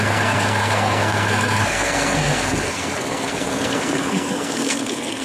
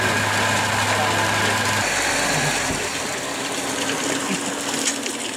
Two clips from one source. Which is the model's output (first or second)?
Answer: first